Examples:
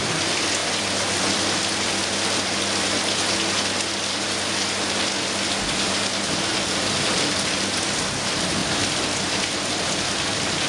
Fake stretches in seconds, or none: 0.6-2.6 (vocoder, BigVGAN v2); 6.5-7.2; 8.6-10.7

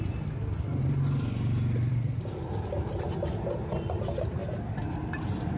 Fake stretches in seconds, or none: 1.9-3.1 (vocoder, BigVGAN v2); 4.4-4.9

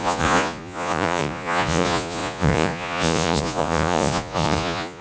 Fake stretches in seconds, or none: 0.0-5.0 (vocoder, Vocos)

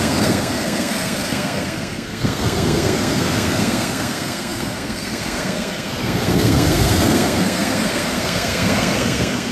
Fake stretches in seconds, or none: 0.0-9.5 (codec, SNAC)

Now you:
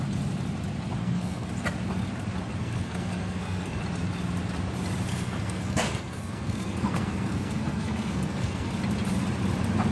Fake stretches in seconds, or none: 1.0-1.5 (codec, SNAC); 2.6-3.8; 5.1-8.7

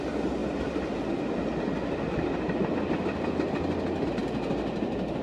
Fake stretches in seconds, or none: none

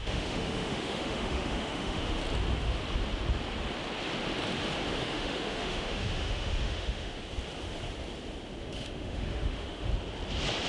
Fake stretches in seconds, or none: 0.0-2.2 (autoencoder, DAC-VAE); 5.0-7.2; 8.6-9.9

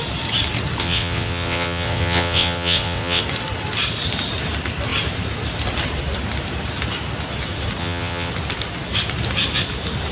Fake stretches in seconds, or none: 0.8-3.2 (vocoder, WaveNeXt); 7.8-8.3